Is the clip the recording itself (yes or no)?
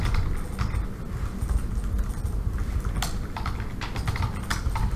yes